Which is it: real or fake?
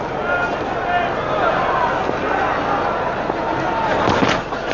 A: real